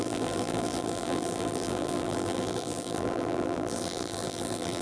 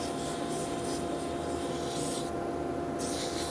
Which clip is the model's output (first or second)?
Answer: first